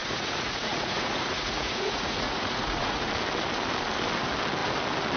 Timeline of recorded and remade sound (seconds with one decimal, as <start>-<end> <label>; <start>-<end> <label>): 0.0-3.1 remade; 3.1-5.2 recorded